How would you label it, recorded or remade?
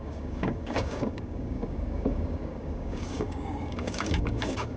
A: remade